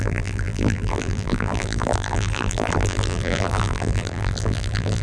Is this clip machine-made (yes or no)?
yes